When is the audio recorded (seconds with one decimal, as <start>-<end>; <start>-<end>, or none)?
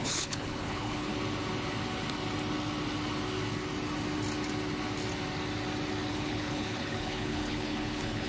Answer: 1.1-6.1